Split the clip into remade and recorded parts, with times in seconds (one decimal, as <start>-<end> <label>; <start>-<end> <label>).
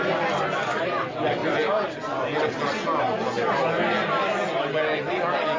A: 0.0-5.6 recorded